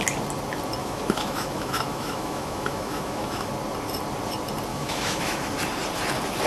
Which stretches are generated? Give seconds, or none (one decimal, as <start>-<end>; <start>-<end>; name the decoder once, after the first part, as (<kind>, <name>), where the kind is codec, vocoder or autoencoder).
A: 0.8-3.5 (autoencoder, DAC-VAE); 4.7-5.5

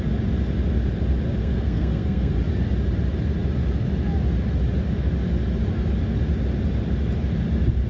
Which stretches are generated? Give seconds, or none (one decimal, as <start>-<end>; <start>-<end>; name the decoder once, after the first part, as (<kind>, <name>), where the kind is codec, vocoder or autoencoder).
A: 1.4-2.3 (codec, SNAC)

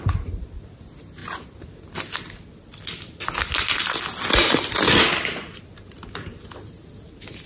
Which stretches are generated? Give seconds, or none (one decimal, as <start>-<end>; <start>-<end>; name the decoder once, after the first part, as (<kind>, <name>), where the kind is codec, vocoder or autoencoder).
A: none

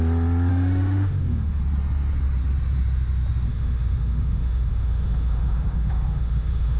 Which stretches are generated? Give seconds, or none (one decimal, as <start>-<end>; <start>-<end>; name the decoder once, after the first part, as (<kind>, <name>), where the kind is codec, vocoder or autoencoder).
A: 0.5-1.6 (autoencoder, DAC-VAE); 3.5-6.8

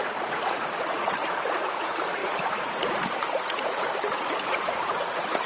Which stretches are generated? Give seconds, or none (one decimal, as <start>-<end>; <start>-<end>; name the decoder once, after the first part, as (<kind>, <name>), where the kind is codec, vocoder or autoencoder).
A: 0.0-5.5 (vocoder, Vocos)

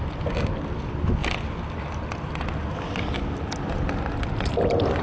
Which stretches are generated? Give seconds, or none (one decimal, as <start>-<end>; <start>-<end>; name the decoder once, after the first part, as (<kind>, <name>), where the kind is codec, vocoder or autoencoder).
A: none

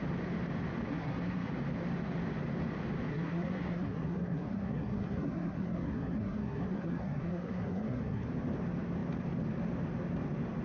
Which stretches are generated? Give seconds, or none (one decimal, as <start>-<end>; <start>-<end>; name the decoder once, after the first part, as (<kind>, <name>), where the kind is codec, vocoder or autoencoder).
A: 0.9-1.5 (codec, SNAC); 3.1-8.3